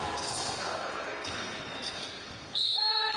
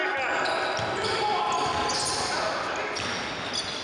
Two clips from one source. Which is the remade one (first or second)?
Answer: first